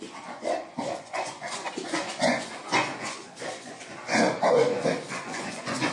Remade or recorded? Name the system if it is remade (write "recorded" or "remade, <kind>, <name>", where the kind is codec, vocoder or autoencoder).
remade, vocoder, Vocos